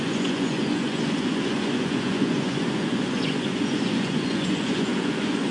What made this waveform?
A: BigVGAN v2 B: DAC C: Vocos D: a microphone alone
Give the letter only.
C